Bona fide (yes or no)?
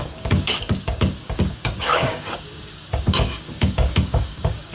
no